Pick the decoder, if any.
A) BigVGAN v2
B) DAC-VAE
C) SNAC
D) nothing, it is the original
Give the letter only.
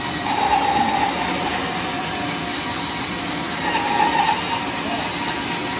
D